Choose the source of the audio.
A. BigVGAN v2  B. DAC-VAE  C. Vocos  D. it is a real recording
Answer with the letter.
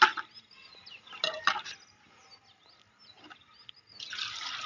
D